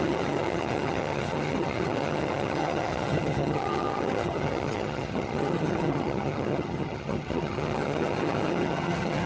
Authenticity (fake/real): fake